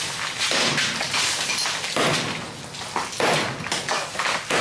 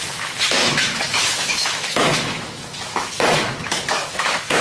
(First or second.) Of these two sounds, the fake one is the second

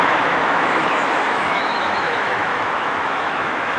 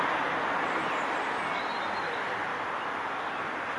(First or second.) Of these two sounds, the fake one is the first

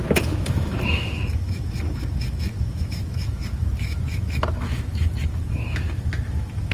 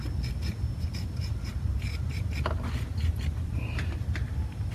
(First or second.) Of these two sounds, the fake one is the first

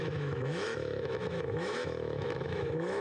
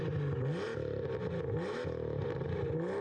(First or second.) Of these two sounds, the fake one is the first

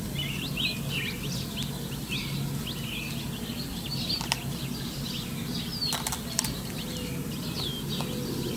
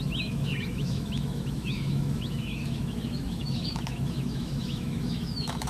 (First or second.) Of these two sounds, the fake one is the second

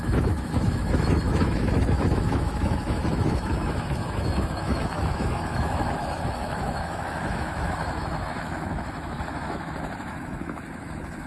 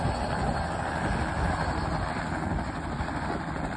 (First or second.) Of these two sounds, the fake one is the first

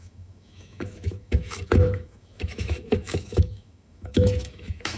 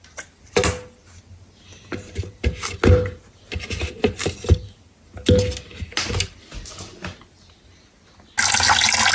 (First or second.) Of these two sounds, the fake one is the first